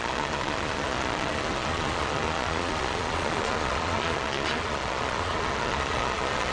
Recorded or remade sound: remade